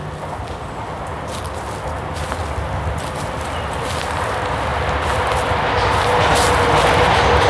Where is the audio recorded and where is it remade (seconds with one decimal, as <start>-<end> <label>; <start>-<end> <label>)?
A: 0.0-7.5 recorded

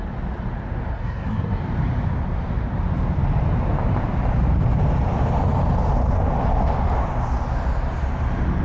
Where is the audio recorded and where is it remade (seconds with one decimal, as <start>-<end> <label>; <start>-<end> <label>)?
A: 0.0-0.9 recorded; 0.9-1.6 remade; 1.6-8.6 recorded

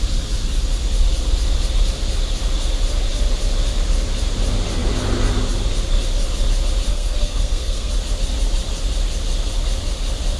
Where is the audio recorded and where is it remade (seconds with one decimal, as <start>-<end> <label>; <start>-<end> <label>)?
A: 0.0-6.9 recorded; 6.9-7.9 remade; 7.9-10.4 recorded

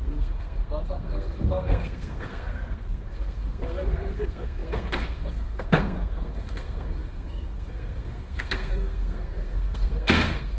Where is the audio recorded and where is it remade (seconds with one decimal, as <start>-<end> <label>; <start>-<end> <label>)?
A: 0.0-10.6 remade

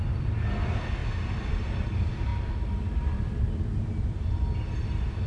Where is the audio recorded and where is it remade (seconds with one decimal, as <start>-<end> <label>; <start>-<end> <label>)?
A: 0.0-5.3 recorded

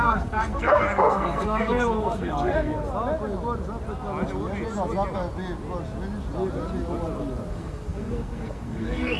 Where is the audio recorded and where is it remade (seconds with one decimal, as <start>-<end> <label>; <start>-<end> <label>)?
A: 0.0-2.7 remade; 2.7-7.5 recorded; 7.5-9.2 remade

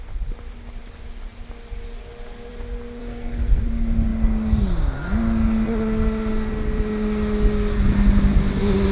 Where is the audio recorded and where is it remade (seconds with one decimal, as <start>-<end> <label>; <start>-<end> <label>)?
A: 0.0-3.0 recorded; 3.0-3.6 remade; 3.6-8.9 recorded